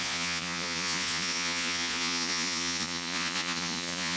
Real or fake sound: fake